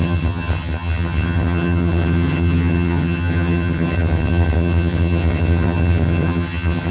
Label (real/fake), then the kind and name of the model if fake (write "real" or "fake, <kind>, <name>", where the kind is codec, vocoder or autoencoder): fake, vocoder, HiFi-GAN